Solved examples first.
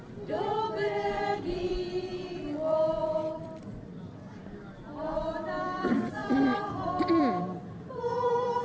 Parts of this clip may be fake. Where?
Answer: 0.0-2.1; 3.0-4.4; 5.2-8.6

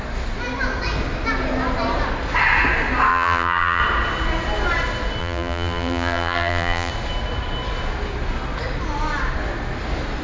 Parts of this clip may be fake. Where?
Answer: 3.1-3.8; 5.2-6.9